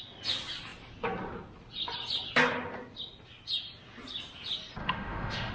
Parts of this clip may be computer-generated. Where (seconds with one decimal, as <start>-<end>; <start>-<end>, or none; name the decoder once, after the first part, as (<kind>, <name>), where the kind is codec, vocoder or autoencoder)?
4.8-5.5 (autoencoder, DAC-VAE)